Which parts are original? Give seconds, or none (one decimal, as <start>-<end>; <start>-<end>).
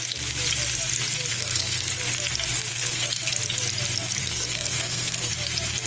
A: 0.0-1.3; 1.9-2.7; 3.3-4.2; 5.3-5.9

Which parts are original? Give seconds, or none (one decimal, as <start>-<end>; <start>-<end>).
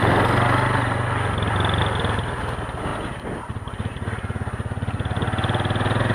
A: 0.0-6.1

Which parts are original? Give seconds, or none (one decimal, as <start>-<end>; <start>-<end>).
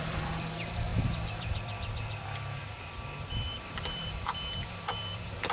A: none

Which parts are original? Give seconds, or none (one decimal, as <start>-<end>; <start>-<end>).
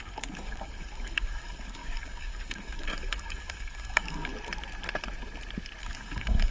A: 4.3-5.8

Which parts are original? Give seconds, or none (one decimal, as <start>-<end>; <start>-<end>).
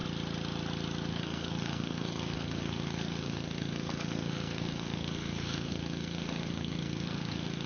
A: 0.0-1.1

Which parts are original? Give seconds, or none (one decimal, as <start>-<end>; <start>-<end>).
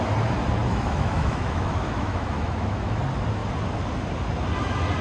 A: 0.0-0.6; 3.0-5.0